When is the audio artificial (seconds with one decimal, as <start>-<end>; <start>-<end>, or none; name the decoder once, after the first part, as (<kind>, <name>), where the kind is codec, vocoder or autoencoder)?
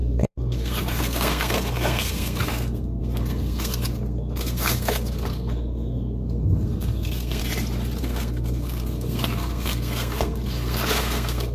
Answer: 0.0-7.4 (codec, SNAC); 8.0-11.5